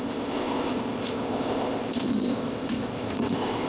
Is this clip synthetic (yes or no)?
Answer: yes